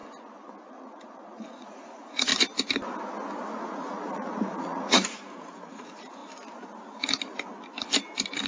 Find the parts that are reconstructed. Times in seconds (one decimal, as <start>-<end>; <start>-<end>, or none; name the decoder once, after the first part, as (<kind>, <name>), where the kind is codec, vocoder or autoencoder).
0.7-2.3 (vocoder, Vocos); 3.6-6.2